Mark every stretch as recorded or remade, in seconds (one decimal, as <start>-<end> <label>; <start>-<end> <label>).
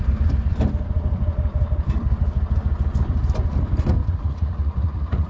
0.0-4.0 recorded; 4.0-5.3 remade